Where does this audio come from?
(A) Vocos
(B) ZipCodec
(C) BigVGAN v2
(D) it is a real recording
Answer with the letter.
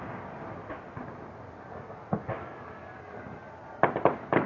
D